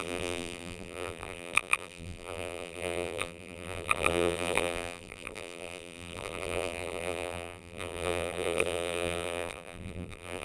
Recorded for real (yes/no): no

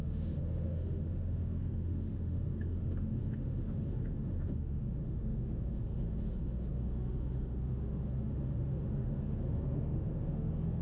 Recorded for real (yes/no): no